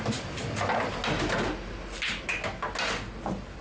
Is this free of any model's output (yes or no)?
yes